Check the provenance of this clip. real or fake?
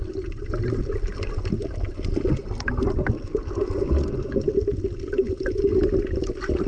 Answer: real